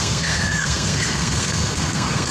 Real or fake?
fake